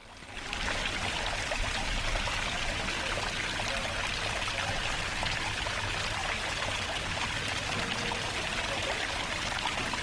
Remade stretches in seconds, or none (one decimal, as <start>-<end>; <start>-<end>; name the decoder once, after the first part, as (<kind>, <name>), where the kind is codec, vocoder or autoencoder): none